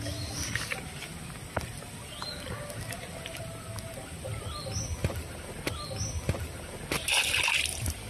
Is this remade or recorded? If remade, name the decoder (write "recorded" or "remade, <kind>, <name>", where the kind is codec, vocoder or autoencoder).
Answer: recorded